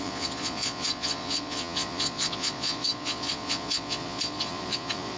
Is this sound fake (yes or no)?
yes